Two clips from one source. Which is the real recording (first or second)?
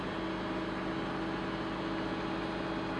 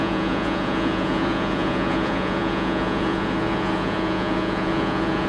first